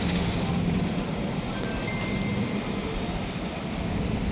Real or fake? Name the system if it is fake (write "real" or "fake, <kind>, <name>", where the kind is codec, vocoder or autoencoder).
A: real